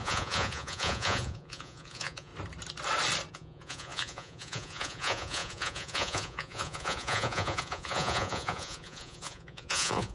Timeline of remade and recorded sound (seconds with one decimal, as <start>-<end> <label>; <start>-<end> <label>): 0.0-2.3 remade; 2.3-3.3 recorded; 3.3-10.1 remade